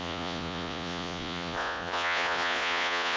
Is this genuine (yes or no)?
no